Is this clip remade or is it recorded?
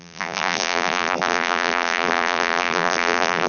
remade